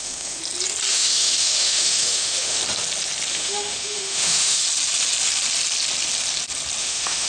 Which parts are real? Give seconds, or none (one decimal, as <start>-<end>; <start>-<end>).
0.4-0.9; 2.6-3.3; 4.6-6.8